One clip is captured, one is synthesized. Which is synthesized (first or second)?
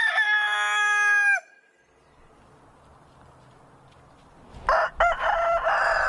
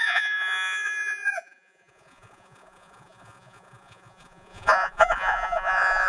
second